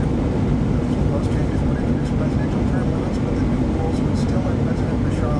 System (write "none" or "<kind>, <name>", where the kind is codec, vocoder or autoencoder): none